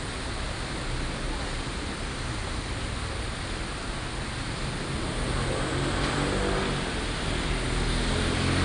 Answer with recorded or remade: recorded